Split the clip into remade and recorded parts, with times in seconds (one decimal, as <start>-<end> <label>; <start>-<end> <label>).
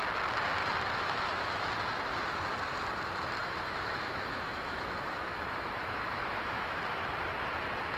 0.0-0.6 recorded; 0.6-1.7 remade; 1.7-3.4 recorded; 3.4-6.8 remade; 6.8-8.0 recorded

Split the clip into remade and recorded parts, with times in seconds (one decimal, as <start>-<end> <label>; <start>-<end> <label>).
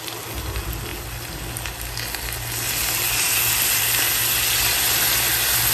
0.0-5.7 recorded